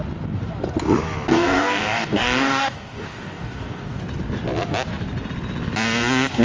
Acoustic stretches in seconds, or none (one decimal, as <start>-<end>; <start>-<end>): 0.0-1.3; 4.0-6.4